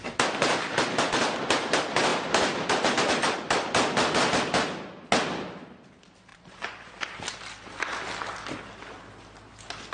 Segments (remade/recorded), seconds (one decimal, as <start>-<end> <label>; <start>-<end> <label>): 0.0-6.3 recorded; 6.3-6.9 remade; 6.9-9.9 recorded